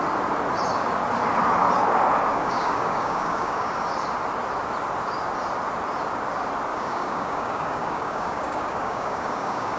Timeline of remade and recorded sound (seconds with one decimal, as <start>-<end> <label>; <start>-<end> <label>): 0.0-2.3 recorded; 2.3-3.7 remade; 3.7-6.7 recorded; 6.7-9.8 remade